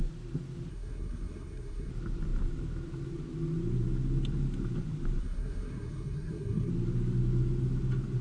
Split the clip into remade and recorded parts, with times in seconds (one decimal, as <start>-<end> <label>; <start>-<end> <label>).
0.0-0.7 recorded; 0.7-1.9 remade; 1.9-5.2 recorded; 5.2-6.7 remade; 6.7-8.2 recorded